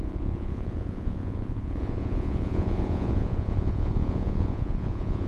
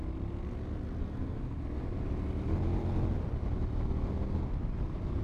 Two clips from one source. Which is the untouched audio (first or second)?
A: second